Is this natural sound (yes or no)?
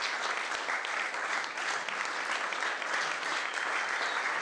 yes